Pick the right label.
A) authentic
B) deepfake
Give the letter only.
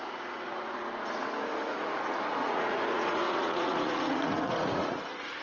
B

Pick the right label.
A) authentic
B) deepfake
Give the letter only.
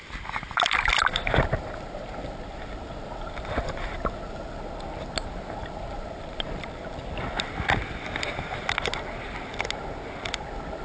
A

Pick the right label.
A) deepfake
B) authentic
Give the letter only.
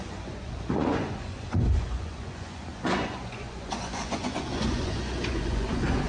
A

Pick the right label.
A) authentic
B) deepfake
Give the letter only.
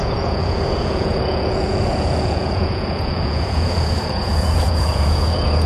B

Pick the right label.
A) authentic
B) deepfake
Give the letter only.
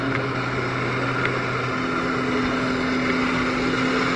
A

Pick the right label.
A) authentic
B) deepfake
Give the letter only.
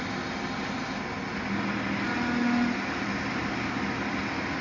A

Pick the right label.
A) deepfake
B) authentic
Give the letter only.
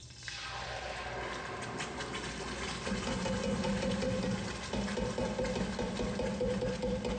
B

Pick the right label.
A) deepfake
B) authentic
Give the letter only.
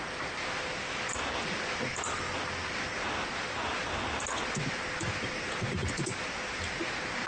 B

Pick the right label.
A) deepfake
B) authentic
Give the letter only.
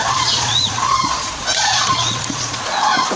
A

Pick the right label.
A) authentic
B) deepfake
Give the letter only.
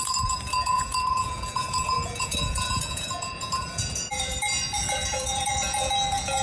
B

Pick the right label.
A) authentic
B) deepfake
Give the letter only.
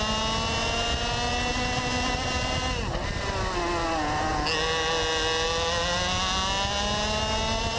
A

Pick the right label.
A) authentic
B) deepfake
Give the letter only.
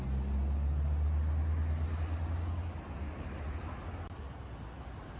A